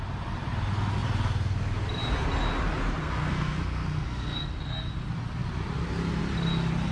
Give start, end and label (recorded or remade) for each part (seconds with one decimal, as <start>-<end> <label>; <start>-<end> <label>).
0.0-3.0 recorded; 3.0-4.5 remade; 4.5-6.9 recorded